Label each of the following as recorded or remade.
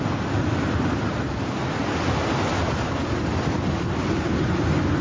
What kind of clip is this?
recorded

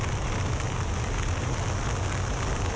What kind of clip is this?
recorded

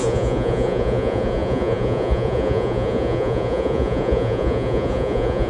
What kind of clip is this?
remade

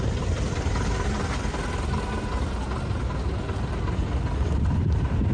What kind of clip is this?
recorded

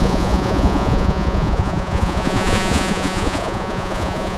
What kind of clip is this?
remade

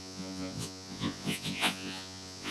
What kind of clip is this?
remade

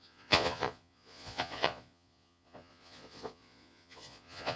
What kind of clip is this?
remade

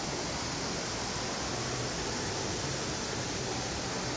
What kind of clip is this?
recorded